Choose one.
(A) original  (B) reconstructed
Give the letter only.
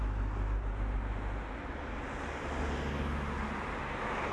A